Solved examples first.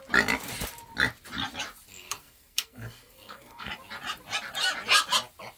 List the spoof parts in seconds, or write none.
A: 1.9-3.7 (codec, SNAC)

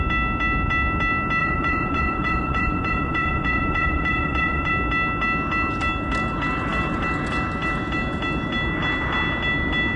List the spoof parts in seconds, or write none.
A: 1.4-4.7 (vocoder, Vocos)

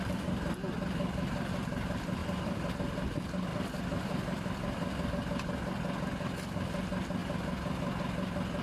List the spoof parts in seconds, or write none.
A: 2.2-2.7 (vocoder, BigVGAN v2); 3.5-5.1; 7.2-7.8

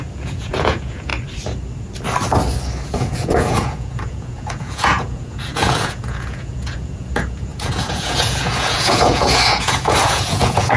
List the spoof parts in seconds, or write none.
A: 0.0-1.1 (vocoder, Vocos); 2.9-10.8

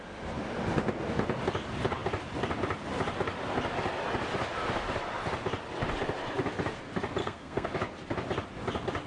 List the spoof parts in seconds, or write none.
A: 7.2-7.7 (codec, SNAC)

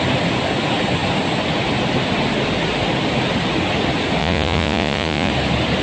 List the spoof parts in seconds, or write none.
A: 4.2-5.3 (vocoder, Vocos)